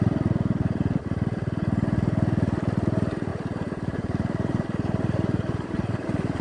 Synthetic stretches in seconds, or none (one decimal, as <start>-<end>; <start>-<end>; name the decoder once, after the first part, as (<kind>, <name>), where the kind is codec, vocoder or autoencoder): 3.3-6.4 (vocoder, BigVGAN v2)